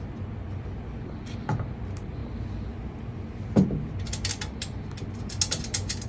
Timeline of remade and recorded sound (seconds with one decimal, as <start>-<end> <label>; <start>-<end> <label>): 0.0-6.1 recorded